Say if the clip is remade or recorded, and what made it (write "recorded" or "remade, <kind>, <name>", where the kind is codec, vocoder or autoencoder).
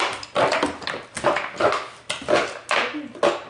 recorded